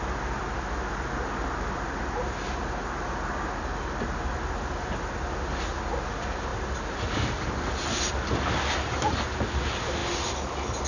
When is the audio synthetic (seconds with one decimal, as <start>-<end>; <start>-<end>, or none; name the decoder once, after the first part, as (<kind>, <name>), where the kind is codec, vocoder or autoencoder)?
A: none